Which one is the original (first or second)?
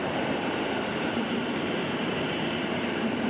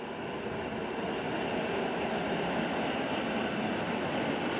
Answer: second